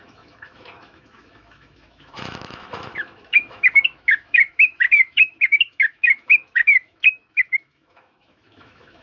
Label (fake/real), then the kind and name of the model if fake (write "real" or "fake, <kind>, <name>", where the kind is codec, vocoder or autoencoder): fake, autoencoder, DAC-VAE